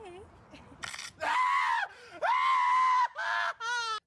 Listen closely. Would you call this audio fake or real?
real